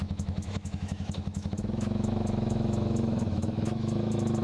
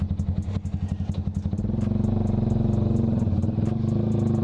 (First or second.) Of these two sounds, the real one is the second